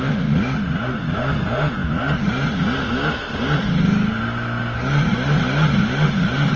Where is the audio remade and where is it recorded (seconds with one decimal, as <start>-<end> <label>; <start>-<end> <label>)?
0.0-6.6 recorded